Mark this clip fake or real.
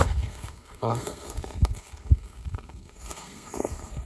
fake